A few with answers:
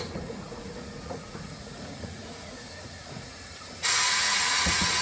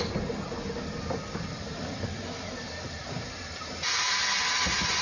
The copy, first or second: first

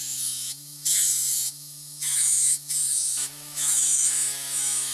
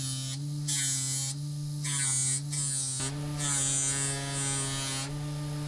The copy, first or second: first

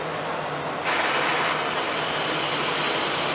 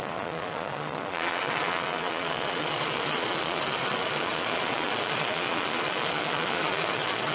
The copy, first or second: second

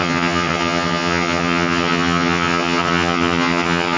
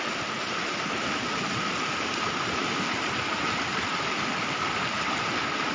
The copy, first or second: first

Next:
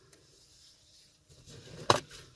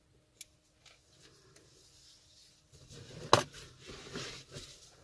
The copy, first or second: first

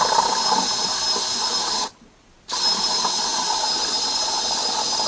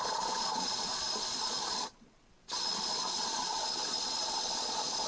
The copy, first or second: second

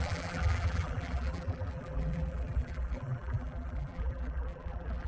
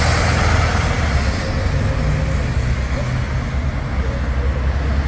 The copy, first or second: first